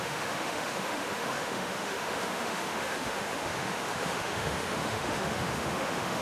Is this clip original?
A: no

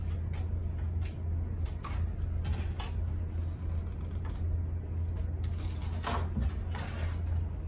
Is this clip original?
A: yes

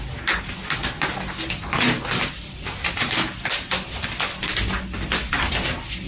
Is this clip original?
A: yes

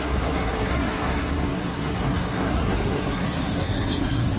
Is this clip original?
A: no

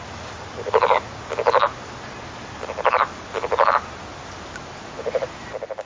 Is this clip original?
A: yes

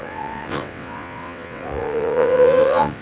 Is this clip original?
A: no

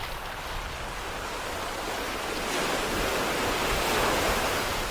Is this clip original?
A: yes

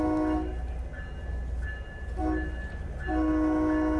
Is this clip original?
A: yes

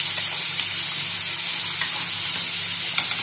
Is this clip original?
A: yes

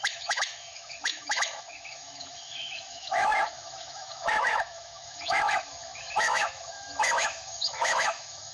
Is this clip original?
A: no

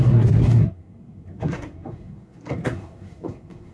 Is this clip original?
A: no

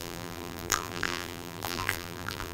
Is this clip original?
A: no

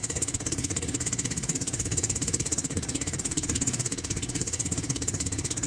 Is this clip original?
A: no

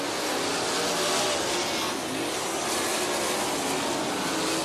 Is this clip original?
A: yes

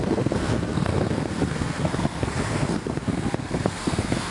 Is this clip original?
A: no